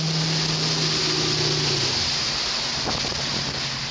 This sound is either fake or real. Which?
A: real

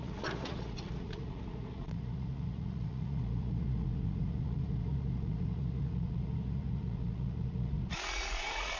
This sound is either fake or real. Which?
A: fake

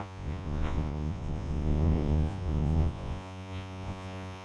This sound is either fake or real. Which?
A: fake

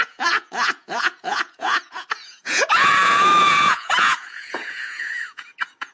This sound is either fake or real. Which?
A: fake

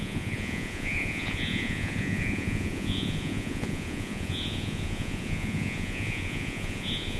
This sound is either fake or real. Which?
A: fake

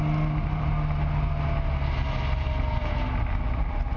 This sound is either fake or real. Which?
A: real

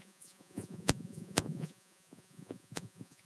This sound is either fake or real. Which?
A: fake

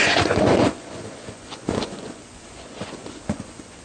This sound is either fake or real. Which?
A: fake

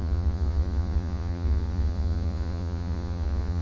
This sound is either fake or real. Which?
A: fake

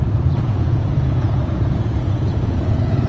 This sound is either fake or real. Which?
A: fake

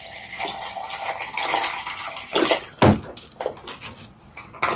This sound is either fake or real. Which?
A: real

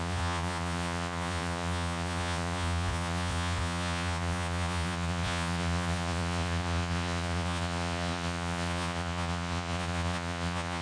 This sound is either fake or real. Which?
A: fake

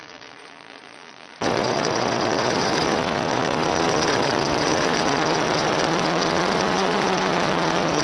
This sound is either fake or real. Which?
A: fake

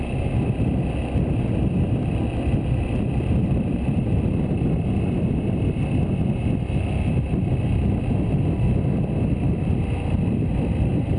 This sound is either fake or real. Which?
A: real